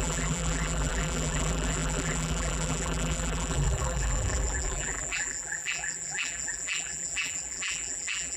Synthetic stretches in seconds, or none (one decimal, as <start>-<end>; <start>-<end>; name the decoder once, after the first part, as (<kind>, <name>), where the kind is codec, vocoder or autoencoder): 0.0-8.4 (vocoder, BigVGAN v2)

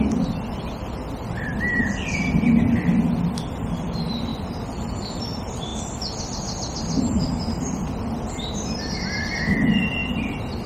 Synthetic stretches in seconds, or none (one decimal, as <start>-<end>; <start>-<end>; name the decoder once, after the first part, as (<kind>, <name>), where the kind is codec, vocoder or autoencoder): 0.0-2.9 (vocoder, BigVGAN v2); 3.7-4.3; 5.2-5.7; 7.9-10.0